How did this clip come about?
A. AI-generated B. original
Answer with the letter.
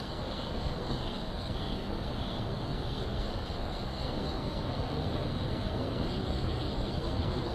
A